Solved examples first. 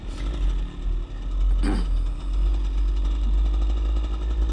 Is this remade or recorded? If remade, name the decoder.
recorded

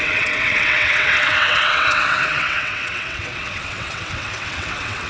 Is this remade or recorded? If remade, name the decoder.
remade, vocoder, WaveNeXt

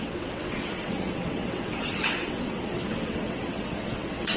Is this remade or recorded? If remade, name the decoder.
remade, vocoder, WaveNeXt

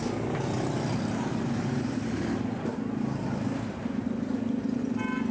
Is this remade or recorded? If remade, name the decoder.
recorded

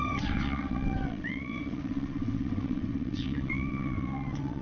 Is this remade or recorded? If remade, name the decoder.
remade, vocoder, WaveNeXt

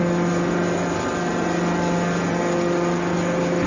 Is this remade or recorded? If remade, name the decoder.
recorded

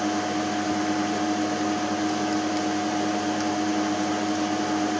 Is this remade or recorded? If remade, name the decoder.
recorded